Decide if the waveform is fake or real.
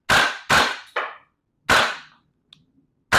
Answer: real